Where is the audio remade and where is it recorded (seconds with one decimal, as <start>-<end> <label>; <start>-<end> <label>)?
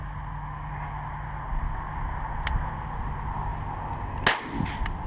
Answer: 0.0-5.1 recorded